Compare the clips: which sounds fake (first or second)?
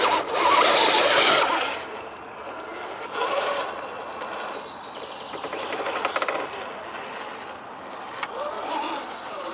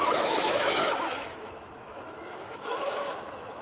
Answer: second